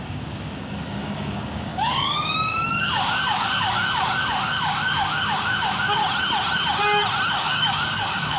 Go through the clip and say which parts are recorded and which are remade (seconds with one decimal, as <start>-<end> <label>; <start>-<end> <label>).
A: 0.0-6.0 remade; 6.0-7.3 recorded; 7.3-8.4 remade